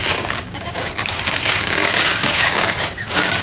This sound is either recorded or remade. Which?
remade